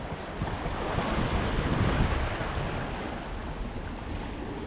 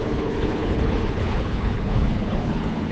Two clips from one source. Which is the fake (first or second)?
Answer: second